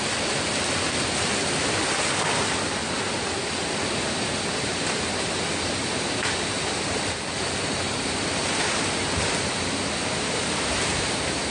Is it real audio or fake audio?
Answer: real